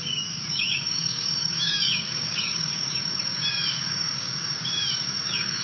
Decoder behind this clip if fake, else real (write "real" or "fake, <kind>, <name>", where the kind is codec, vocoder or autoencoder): fake, codec, DAC